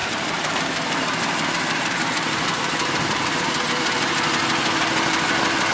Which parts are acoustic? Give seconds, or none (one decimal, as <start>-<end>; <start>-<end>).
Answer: 3.4-5.7